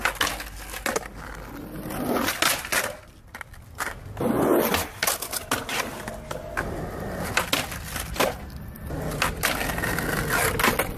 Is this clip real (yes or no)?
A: yes